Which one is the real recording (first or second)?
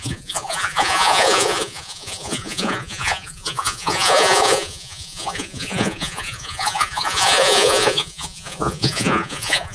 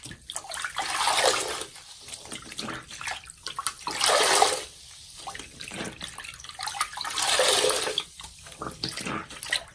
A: second